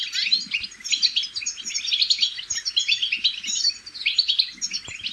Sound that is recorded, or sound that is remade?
recorded